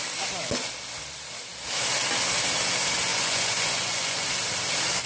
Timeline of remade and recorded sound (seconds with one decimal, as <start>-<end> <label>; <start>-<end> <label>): 0.0-3.1 recorded; 3.1-4.3 remade; 4.3-5.1 recorded